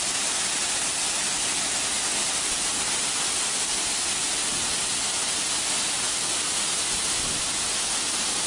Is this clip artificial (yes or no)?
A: no